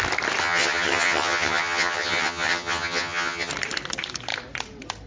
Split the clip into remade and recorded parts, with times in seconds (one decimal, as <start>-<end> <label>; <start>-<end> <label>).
0.0-0.4 recorded; 0.4-3.5 remade; 3.5-5.1 recorded